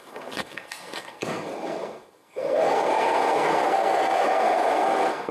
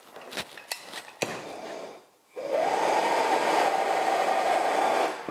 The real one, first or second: second